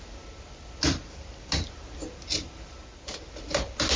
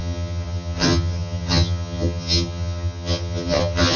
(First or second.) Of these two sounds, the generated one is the second